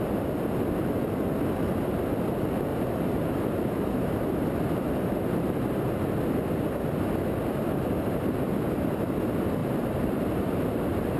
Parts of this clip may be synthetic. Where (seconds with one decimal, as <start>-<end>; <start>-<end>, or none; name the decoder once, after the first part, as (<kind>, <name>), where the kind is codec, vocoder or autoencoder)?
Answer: 2.7-5.9 (vocoder, BigVGAN v2); 9.6-11.2